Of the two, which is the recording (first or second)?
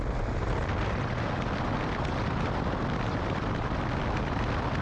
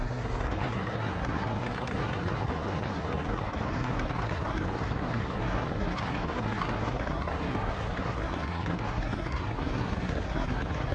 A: first